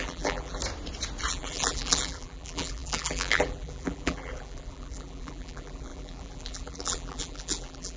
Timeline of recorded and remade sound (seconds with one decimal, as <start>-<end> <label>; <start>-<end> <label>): 0.0-0.6 remade; 0.6-1.3 recorded; 1.3-8.0 remade